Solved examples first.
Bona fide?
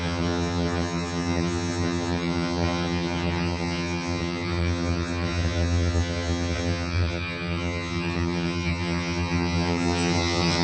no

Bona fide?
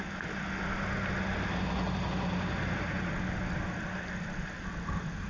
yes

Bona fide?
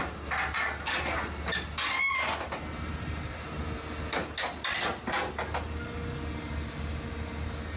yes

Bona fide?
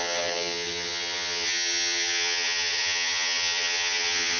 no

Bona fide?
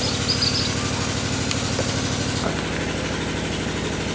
yes